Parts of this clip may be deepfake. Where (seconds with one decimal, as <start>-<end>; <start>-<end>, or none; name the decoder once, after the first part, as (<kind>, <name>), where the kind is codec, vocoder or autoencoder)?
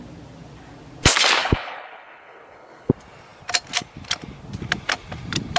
1.4-2.9 (codec, HILCodec)